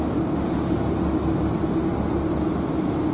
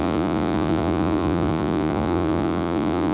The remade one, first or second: second